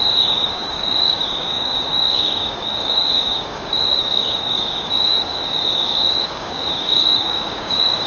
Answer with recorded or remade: remade